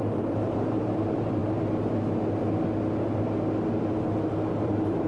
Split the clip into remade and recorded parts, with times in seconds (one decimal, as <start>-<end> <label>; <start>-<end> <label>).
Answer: 0.0-1.4 remade; 1.4-4.5 recorded; 4.5-5.1 remade